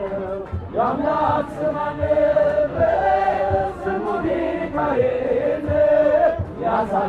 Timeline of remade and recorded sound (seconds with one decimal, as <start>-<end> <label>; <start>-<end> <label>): 0.0-1.7 recorded; 1.7-5.2 remade; 5.2-7.1 recorded